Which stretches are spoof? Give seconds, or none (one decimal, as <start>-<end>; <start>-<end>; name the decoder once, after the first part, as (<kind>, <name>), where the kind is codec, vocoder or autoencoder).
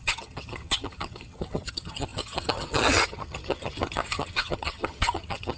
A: 0.0-5.6 (vocoder, HiFi-GAN)